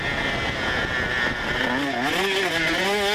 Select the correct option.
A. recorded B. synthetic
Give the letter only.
A